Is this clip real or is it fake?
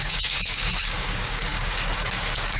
fake